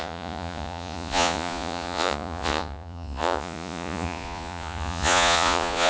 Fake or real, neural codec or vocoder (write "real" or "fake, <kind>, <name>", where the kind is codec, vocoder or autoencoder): fake, vocoder, Vocos